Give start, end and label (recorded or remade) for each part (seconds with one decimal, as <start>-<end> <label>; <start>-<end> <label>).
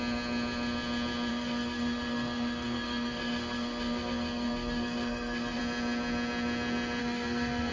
0.0-1.3 recorded; 1.3-5.6 remade; 5.6-7.0 recorded; 7.0-7.7 remade